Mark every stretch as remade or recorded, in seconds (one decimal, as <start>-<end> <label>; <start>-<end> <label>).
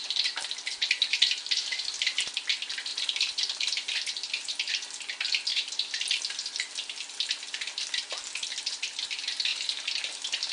0.0-1.6 remade; 1.6-2.9 recorded; 2.9-4.7 remade; 4.7-5.5 recorded; 5.5-6.2 remade; 6.2-10.5 recorded